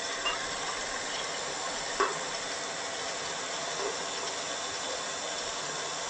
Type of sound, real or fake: real